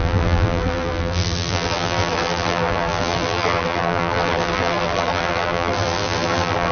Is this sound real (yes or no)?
no